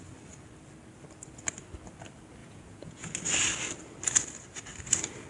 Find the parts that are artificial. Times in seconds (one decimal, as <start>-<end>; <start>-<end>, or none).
2.4-3.1